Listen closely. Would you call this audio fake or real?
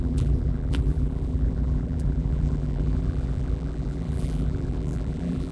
fake